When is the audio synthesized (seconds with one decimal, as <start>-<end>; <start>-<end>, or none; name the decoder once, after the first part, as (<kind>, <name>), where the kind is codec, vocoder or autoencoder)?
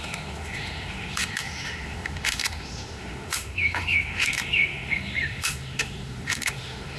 0.0-7.0 (autoencoder, DAC-VAE)